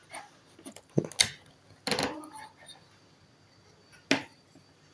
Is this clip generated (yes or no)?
no